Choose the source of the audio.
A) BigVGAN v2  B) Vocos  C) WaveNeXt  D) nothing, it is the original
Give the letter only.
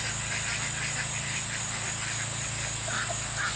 D